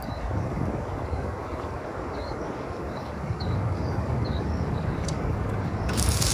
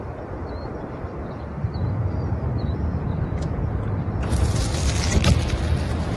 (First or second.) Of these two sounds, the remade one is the first